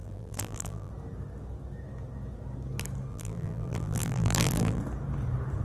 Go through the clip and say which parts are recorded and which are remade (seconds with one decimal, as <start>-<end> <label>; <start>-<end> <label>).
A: 0.0-0.9 remade; 0.9-3.1 recorded; 3.1-4.8 remade; 4.8-5.6 recorded